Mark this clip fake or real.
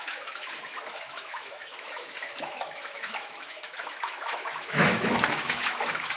fake